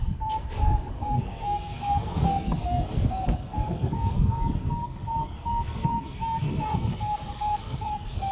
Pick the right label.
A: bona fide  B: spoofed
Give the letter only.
B